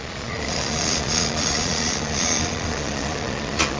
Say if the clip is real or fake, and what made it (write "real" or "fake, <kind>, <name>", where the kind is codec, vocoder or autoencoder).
fake, vocoder, Vocos